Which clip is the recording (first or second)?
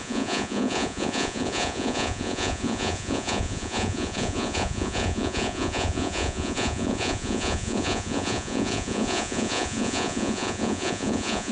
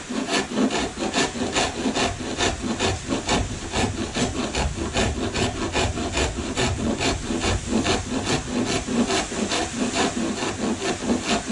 second